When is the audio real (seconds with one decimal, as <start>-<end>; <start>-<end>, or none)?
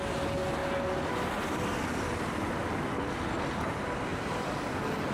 0.0-5.1